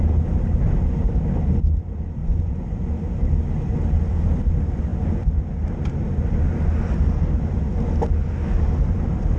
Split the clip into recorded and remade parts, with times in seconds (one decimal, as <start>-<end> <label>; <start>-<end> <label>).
0.0-2.2 recorded; 2.2-2.8 remade; 2.8-9.4 recorded